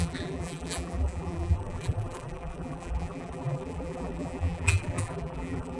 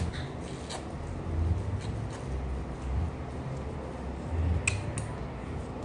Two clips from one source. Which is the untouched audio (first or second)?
second